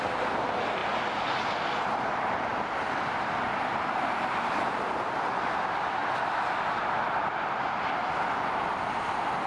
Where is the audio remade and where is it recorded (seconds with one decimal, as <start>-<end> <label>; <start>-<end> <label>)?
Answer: 0.0-0.8 remade; 0.8-2.1 recorded; 2.1-6.0 remade; 6.0-7.2 recorded; 7.2-9.5 remade